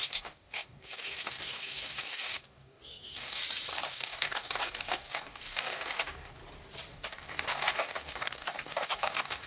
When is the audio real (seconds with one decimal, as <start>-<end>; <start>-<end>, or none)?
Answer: 3.4-3.9; 6.4-6.9